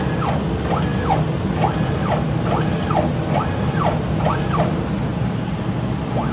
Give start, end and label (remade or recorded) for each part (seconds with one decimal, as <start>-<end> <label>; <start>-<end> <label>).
0.0-5.1 recorded; 5.1-5.6 remade; 5.6-6.3 recorded